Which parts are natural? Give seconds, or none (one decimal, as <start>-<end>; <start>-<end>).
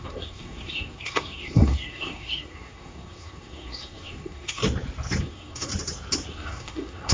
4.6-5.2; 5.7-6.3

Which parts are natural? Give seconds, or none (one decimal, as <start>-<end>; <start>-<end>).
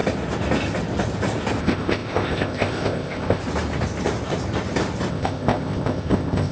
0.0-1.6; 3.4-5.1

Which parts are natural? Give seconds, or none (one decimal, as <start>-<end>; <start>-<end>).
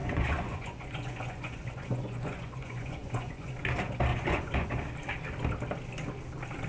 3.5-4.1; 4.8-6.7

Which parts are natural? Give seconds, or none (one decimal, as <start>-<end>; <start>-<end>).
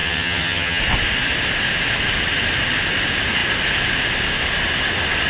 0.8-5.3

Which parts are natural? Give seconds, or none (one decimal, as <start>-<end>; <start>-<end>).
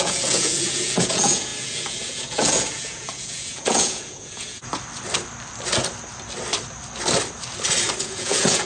4.7-8.0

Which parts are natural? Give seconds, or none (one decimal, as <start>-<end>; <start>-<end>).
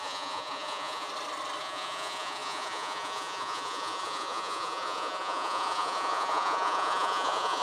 1.1-1.6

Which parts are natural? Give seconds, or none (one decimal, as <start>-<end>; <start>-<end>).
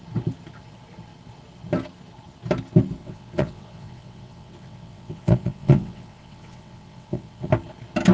0.0-3.0; 7.5-8.1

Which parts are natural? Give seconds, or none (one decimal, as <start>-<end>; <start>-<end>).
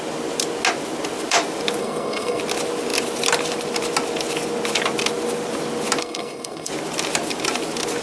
0.0-1.8; 2.4-6.0; 6.7-8.0